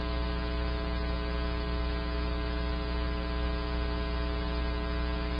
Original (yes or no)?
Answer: yes